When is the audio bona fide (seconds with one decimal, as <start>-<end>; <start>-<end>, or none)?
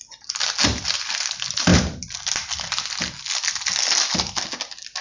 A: 0.0-5.0